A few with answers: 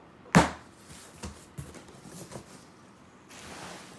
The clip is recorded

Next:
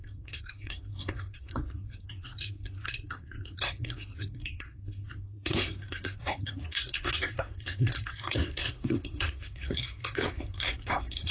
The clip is remade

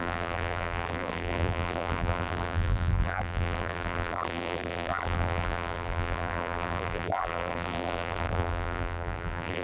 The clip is remade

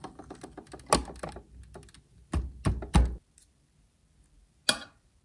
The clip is recorded